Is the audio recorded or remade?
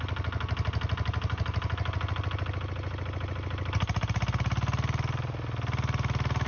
recorded